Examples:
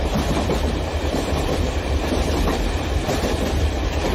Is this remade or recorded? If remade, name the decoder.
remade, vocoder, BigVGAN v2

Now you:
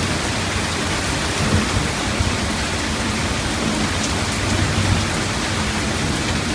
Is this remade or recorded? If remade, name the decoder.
recorded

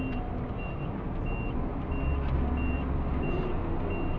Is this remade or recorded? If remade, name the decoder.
recorded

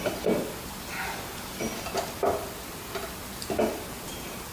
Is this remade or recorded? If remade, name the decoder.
recorded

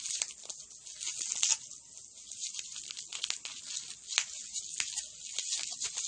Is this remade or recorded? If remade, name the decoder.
recorded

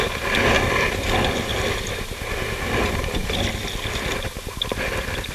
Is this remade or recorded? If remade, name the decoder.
recorded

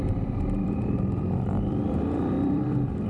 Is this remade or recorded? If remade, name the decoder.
remade, vocoder, BigVGAN v2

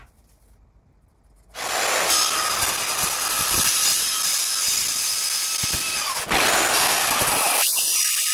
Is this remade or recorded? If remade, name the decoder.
recorded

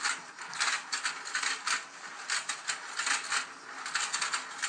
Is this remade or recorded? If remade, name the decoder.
recorded